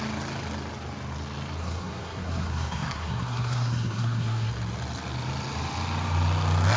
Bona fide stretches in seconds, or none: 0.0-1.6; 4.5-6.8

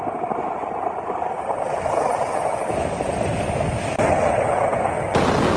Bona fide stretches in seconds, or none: 0.0-5.6